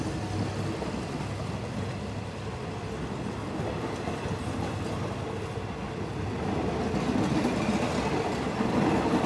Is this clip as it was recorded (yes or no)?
yes